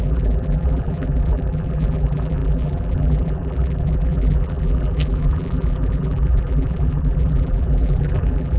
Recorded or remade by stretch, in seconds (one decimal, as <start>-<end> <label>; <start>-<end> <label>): 0.0-8.6 remade